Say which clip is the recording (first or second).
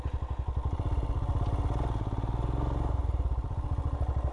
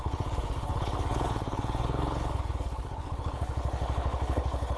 first